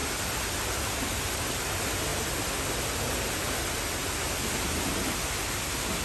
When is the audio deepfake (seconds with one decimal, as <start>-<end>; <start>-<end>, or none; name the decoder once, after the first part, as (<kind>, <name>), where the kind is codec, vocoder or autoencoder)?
none